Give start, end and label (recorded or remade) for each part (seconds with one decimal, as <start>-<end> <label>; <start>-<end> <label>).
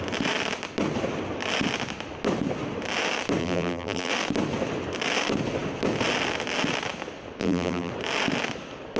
0.0-3.4 recorded; 3.4-4.1 remade; 4.1-7.4 recorded; 7.4-7.9 remade; 7.9-9.0 recorded